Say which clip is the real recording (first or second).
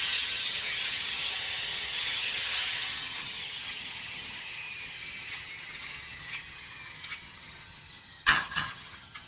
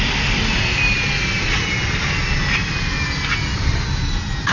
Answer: second